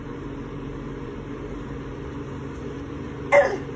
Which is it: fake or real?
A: fake